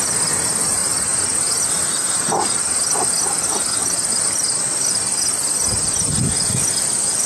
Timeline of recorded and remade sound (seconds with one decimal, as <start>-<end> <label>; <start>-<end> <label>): 0.0-7.3 recorded